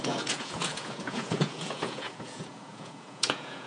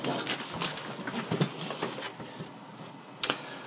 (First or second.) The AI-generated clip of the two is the first